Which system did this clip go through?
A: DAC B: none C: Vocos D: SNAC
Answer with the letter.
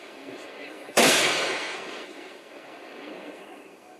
D